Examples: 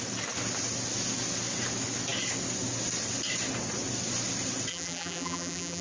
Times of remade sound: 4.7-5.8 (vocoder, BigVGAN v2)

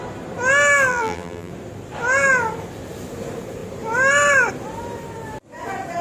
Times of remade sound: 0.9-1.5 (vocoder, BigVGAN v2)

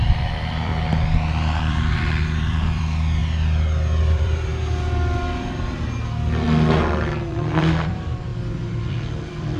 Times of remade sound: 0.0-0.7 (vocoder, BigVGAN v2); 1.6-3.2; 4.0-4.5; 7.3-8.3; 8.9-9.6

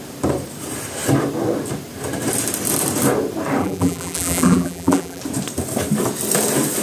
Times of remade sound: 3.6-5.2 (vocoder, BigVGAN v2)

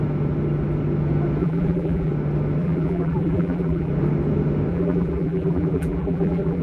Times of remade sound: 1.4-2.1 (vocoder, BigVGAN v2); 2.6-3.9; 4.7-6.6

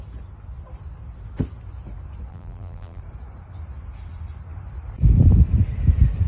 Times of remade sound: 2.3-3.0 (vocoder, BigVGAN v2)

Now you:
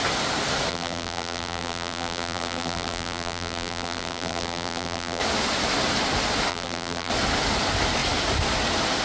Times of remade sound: 0.7-5.2 (vocoder, BigVGAN v2); 6.5-7.1